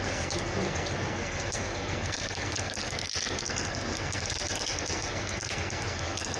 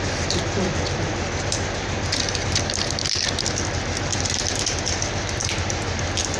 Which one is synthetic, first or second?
first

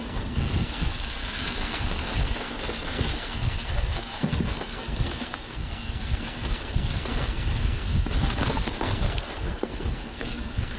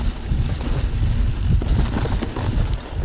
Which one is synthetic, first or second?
first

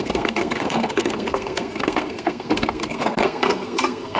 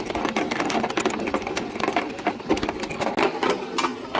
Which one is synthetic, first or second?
first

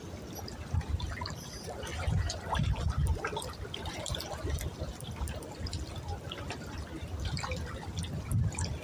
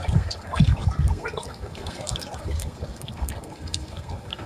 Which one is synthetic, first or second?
second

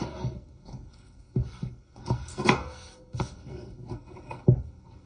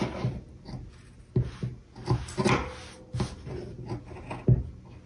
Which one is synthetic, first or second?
first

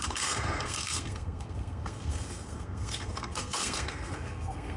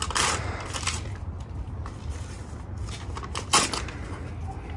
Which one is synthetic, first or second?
first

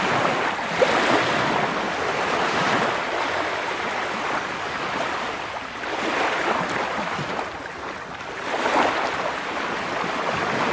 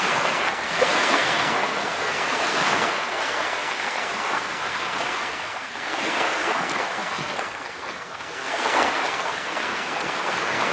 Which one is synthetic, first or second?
second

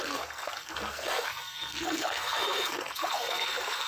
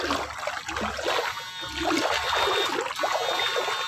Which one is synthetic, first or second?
first